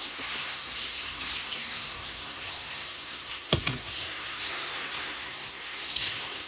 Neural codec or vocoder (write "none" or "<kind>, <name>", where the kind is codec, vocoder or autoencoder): codec, SNAC